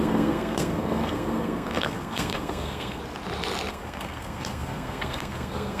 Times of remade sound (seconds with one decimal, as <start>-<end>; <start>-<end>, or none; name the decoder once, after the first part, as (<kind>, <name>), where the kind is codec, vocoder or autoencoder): 0.0-3.0 (codec, SNAC); 3.7-5.8

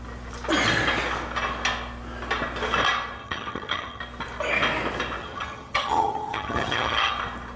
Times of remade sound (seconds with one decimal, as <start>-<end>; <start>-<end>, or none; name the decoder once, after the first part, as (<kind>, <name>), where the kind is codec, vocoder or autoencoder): 3.2-4.0 (vocoder, HiFi-GAN); 5.2-7.1

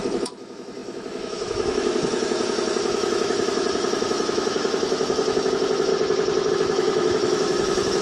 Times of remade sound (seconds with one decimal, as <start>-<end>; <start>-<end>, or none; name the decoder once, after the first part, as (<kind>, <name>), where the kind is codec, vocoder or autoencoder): 0.0-5.9 (autoencoder, DAC-VAE); 6.5-8.0

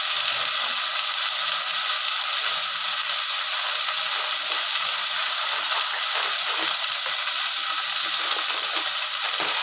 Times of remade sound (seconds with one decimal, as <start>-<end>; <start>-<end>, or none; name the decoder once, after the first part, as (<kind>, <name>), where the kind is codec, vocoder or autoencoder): none

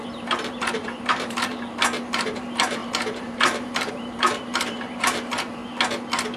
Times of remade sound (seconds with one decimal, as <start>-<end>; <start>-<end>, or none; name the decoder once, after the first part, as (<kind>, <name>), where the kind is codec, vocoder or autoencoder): 0.0-5.6 (vocoder, BigVGAN v2)

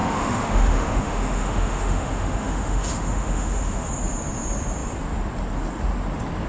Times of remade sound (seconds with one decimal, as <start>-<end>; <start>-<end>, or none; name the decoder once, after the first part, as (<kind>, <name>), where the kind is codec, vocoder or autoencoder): 0.0-3.9 (autoencoder, DAC-VAE)

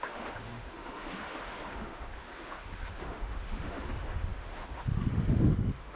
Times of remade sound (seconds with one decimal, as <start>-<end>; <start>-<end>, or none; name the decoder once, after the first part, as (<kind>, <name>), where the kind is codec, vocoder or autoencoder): 0.0-6.0 (autoencoder, DAC-VAE)